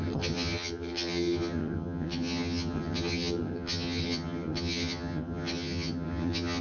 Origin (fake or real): fake